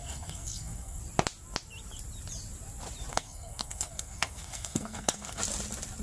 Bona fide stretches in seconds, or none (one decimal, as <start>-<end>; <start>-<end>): 1.0-3.1; 5.4-6.0